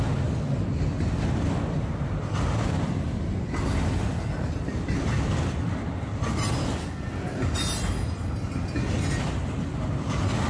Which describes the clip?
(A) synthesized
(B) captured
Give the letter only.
B